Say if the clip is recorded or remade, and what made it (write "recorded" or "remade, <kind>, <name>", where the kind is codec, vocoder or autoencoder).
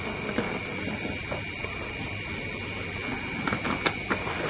recorded